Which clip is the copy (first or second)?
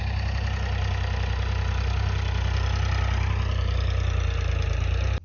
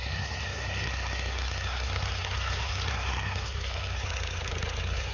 second